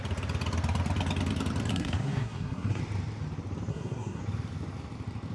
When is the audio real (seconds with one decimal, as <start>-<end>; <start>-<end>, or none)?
0.0-1.7; 2.8-3.7; 4.2-5.3